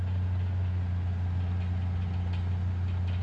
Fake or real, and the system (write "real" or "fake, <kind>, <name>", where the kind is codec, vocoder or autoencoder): real